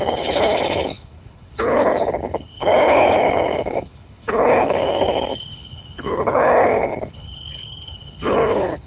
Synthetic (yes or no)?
yes